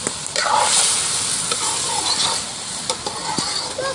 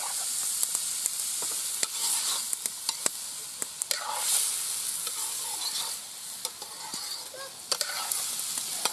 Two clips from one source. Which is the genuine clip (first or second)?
second